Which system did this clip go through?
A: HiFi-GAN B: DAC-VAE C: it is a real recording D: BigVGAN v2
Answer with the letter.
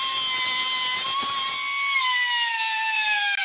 C